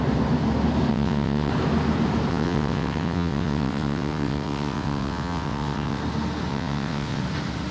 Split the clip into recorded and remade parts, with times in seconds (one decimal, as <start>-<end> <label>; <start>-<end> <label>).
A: 0.0-0.9 recorded; 0.9-1.5 remade; 1.5-2.3 recorded; 2.3-6.0 remade; 6.0-6.5 recorded; 6.5-7.2 remade; 7.2-7.7 recorded